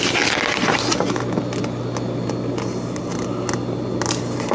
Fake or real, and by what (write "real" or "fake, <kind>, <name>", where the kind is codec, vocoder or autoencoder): real